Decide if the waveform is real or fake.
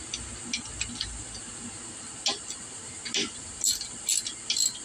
real